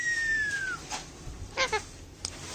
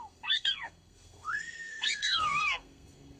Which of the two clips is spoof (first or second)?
second